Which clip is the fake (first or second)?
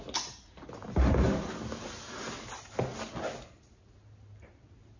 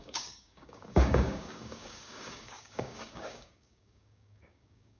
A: second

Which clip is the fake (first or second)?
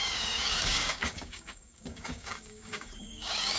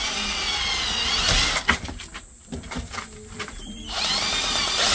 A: first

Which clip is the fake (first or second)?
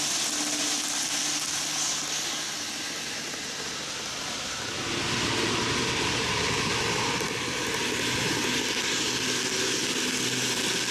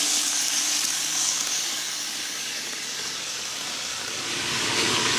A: second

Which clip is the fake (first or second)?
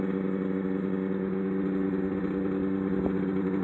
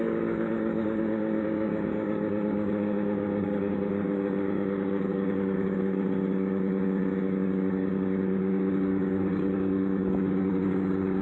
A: second